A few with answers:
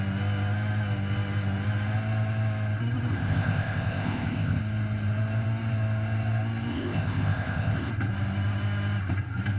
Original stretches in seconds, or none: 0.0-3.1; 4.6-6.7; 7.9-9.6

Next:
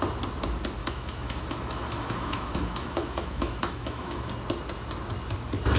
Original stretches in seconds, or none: 0.0-0.8; 4.3-5.8

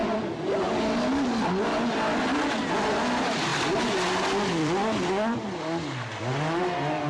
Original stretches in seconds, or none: 0.0-7.1

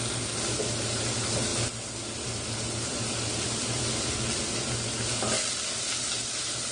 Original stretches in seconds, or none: 0.0-6.7

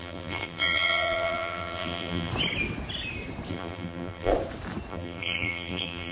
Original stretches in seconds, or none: 2.3-3.5; 4.3-4.9

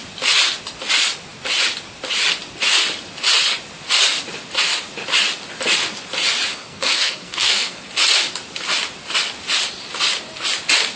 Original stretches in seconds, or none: 0.0-6.5; 7.8-11.0

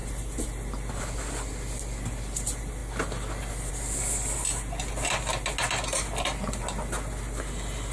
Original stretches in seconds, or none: 0.0-7.9